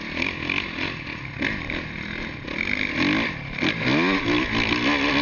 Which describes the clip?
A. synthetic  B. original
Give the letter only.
B